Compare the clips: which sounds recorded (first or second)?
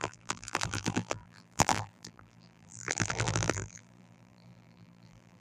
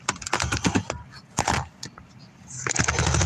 second